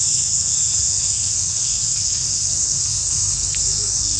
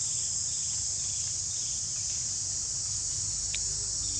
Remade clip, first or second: first